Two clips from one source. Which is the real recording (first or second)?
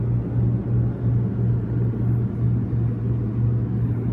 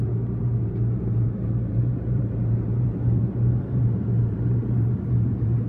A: first